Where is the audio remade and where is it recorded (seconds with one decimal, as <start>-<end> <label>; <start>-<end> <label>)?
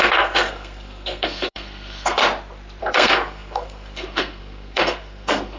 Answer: 0.0-2.2 remade; 2.2-2.8 recorded; 2.8-5.6 remade